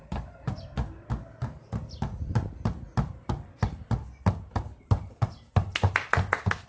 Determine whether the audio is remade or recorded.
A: recorded